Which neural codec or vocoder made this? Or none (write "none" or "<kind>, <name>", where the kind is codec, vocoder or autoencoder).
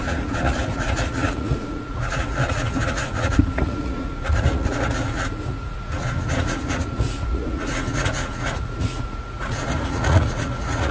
vocoder, Vocos